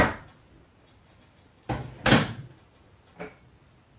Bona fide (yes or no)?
yes